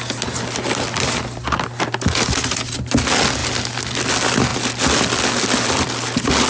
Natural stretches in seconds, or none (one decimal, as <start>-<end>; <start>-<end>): 0.0-6.5